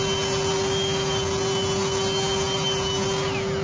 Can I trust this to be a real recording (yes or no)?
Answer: yes